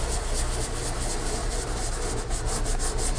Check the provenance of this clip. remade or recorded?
recorded